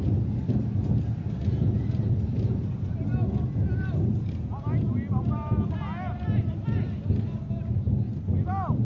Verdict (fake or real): real